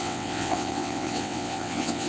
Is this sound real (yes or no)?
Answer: no